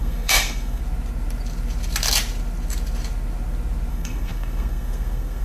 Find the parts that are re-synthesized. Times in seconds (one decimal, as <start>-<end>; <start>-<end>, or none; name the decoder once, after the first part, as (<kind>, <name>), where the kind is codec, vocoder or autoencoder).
0.0-0.8 (codec, SNAC); 3.9-5.4